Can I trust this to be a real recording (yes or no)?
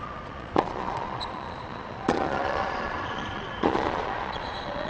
no